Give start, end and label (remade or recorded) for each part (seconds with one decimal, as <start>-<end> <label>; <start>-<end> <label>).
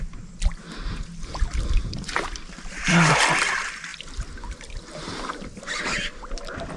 0.0-1.8 recorded; 1.8-3.1 remade; 3.1-3.9 recorded; 3.9-5.1 remade; 5.1-6.8 recorded